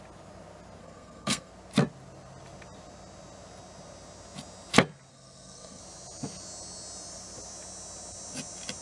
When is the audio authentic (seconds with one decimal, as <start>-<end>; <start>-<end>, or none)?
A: 0.0-0.8; 1.5-5.1; 5.8-8.8